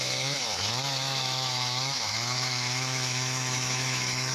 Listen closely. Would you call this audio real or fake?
fake